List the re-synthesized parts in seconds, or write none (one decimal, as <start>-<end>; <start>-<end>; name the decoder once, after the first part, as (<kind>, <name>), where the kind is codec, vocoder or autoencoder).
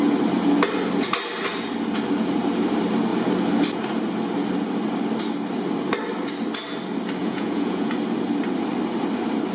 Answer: 7.2-7.9 (vocoder, Vocos)